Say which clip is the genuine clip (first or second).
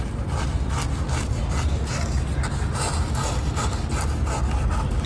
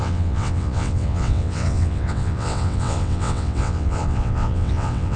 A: first